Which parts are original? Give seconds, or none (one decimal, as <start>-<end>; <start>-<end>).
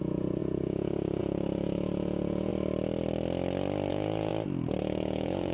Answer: 2.5-3.9; 4.3-4.8